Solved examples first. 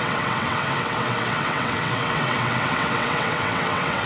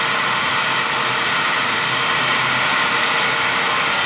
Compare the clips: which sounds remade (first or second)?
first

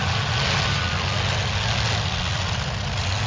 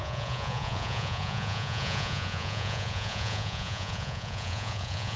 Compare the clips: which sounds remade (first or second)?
second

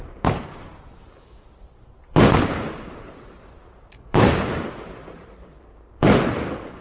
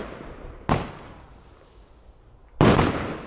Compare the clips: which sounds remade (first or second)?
first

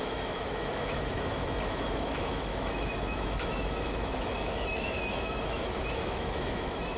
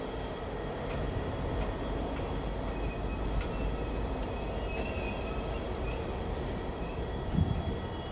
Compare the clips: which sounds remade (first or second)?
first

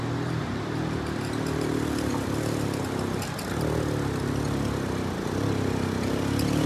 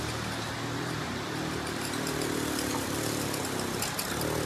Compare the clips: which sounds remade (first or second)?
second